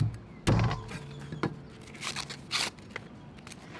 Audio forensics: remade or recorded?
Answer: recorded